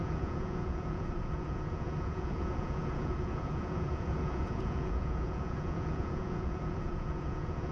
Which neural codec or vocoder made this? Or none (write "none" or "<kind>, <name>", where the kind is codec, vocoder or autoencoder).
vocoder, Vocos